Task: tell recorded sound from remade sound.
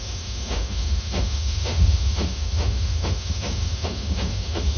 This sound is remade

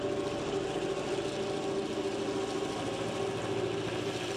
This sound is recorded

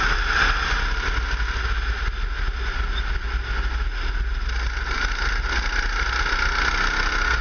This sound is recorded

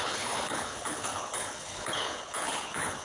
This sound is remade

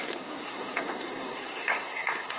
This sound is remade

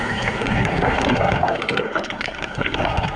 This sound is remade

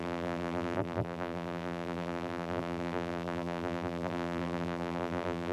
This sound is remade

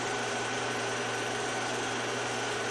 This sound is remade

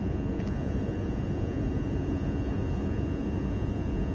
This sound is remade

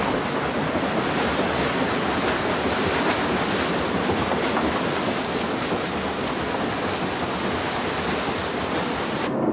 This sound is recorded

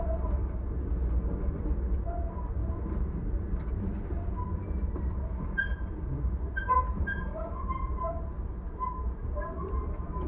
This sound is recorded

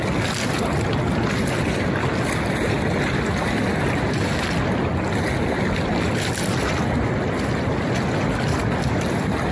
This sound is recorded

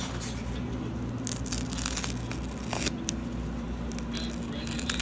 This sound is recorded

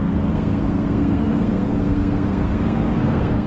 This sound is remade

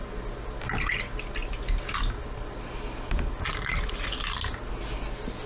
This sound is recorded